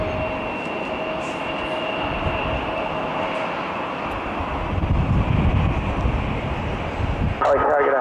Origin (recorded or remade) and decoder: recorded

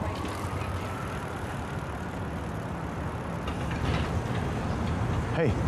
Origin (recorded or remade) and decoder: recorded